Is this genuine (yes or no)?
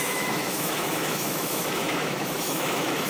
no